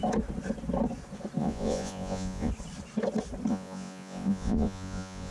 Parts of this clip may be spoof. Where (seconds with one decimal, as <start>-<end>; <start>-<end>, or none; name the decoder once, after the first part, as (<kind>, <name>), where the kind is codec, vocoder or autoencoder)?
1.4-2.5 (vocoder, Vocos); 3.5-5.3